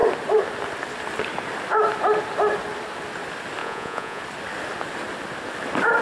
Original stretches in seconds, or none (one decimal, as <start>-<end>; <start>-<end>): 0.0-3.6; 4.2-6.0